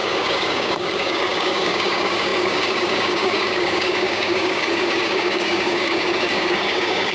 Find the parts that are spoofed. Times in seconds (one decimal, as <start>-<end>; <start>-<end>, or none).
0.0-7.1